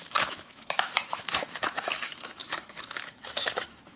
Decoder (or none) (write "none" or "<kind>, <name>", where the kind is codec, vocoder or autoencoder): autoencoder, DAC-VAE